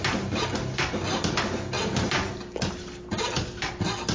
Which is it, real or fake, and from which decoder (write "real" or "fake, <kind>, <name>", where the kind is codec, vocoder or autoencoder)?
real